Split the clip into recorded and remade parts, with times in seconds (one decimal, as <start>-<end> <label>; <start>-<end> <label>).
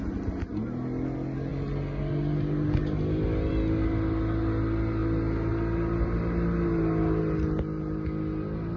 0.0-8.8 recorded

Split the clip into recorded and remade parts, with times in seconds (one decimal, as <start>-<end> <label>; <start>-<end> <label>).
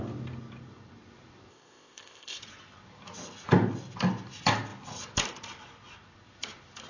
0.0-1.5 recorded; 1.5-2.4 remade; 2.4-6.9 recorded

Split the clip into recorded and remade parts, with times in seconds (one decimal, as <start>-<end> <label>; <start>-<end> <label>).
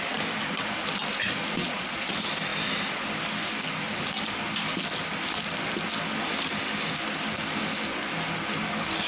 0.0-1.6 recorded; 1.6-2.1 remade; 2.1-9.1 recorded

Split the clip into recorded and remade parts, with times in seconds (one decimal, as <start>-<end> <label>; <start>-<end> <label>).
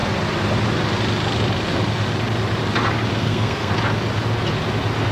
0.0-3.2 recorded; 3.2-3.7 remade; 3.7-5.1 recorded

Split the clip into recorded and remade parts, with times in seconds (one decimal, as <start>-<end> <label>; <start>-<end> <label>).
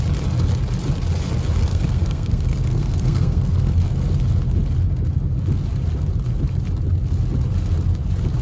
0.0-1.7 recorded; 1.7-3.7 remade; 3.7-8.4 recorded